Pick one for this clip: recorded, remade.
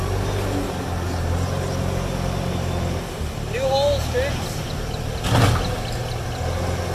recorded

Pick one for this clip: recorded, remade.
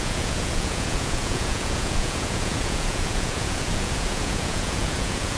remade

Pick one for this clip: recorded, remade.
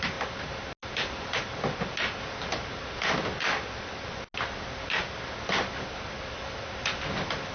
recorded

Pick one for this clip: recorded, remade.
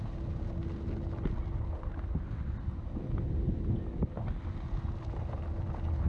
recorded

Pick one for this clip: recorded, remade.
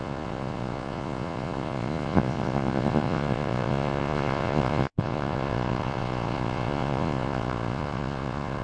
remade